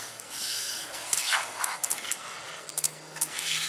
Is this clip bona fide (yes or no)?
no